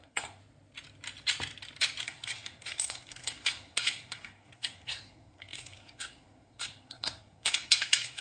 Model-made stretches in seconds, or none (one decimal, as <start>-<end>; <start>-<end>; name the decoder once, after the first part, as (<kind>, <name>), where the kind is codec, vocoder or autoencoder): 0.0-0.4 (codec, SNAC); 2.0-8.2